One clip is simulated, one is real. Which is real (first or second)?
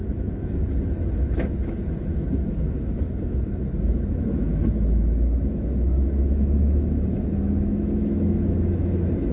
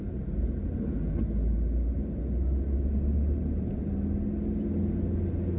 second